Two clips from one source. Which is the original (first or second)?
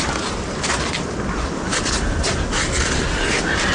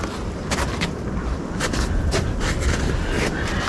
first